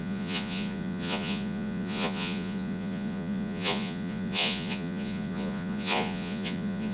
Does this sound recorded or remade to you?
remade